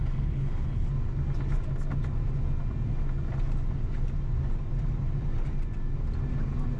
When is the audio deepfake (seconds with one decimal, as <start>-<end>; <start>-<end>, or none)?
0.0-0.9